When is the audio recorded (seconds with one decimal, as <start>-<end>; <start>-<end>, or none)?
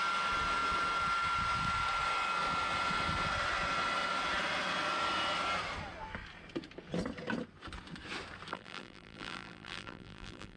0.0-8.5